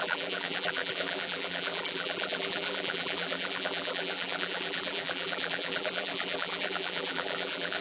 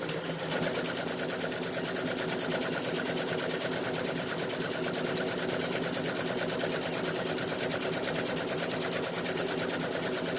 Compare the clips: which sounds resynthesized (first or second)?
first